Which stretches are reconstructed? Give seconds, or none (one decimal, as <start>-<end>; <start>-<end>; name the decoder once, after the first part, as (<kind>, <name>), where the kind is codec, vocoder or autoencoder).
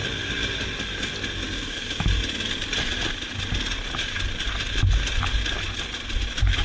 none